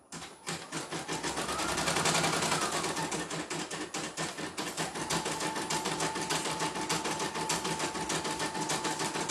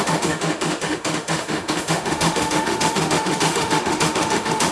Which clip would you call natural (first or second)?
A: first